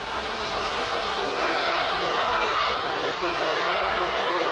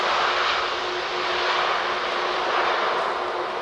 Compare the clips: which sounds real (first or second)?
second